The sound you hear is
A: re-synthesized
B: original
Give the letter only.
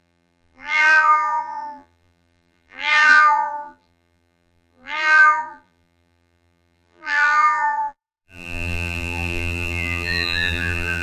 A